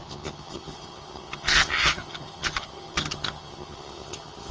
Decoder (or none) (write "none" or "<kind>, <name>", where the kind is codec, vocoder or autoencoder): vocoder, HiFi-GAN